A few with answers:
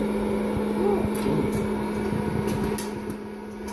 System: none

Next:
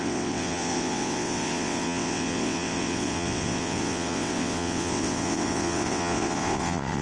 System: vocoder, WaveNeXt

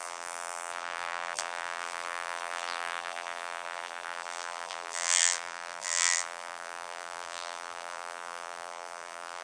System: vocoder, BigVGAN v2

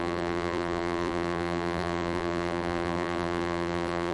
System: vocoder, BigVGAN v2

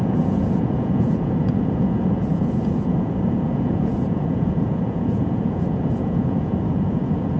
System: vocoder, Vocos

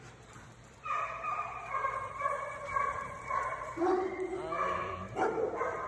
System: vocoder, BigVGAN v2